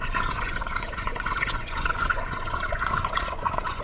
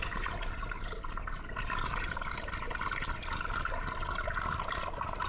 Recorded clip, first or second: second